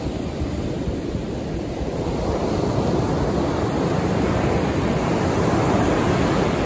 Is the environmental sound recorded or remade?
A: recorded